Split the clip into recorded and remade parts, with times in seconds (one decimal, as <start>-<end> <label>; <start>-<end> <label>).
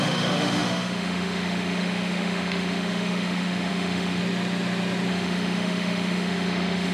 0.0-4.2 remade; 4.2-5.1 recorded; 5.1-6.9 remade